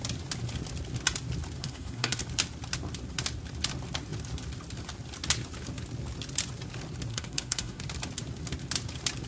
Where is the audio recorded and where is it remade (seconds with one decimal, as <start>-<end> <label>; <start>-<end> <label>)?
0.0-1.6 recorded; 1.6-2.2 remade; 2.2-7.1 recorded; 7.1-7.8 remade; 7.8-9.3 recorded